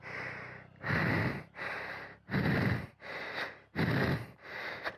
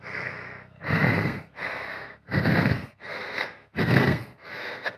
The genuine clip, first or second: first